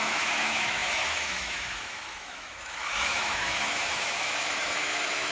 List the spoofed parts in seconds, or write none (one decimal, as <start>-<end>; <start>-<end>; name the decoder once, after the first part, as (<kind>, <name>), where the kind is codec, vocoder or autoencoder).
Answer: 0.0-5.3 (autoencoder, DAC-VAE)